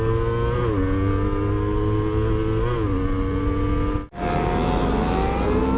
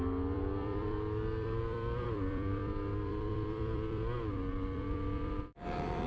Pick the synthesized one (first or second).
second